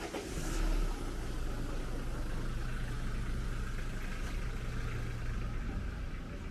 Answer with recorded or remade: recorded